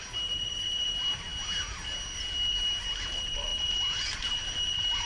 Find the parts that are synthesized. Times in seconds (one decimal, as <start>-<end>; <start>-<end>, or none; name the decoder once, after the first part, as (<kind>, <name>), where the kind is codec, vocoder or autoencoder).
none